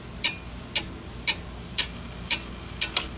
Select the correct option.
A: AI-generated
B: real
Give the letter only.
B